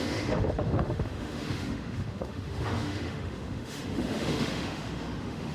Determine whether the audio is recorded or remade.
remade